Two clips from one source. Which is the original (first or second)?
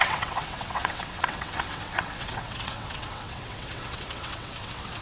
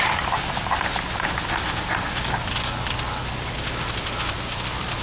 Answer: second